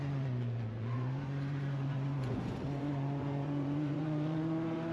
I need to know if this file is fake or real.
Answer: fake